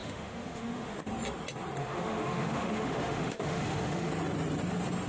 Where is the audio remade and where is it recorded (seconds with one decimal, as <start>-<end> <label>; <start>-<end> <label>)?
0.0-1.0 remade; 1.0-1.8 recorded; 1.8-4.1 remade; 4.1-5.1 recorded